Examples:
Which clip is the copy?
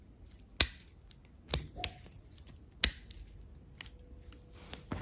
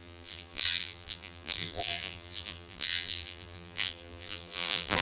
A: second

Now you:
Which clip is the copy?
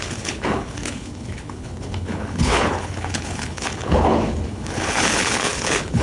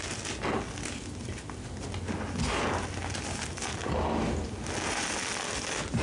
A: first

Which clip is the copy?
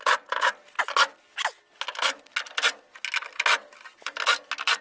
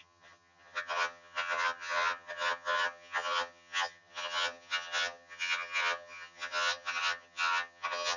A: second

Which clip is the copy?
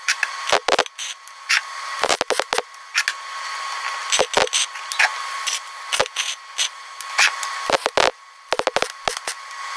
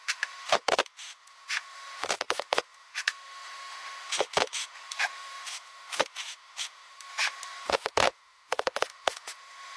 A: second